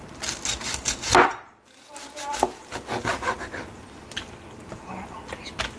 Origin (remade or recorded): recorded